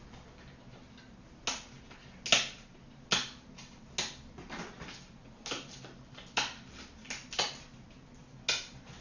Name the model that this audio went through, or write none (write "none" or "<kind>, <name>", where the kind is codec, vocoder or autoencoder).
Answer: none